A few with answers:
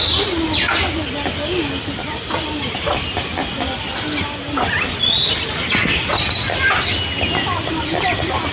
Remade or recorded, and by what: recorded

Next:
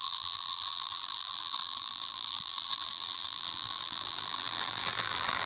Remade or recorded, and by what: remade, vocoder, BigVGAN v2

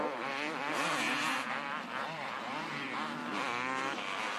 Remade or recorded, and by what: remade, vocoder, BigVGAN v2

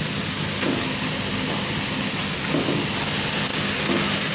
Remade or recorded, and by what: recorded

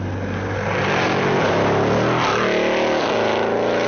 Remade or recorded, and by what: recorded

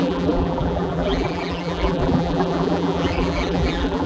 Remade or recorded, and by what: remade, vocoder, BigVGAN v2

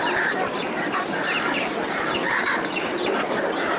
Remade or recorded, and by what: remade, vocoder, BigVGAN v2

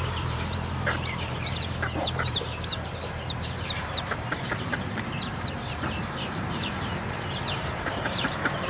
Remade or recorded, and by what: remade, vocoder, BigVGAN v2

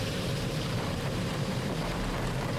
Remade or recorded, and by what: remade, vocoder, BigVGAN v2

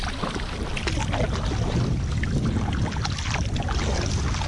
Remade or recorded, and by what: recorded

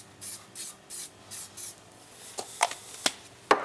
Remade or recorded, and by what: recorded